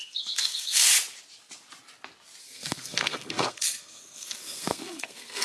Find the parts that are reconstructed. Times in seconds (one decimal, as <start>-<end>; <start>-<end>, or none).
0.0-0.9; 2.4-5.4